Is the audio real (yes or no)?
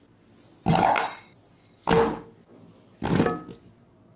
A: yes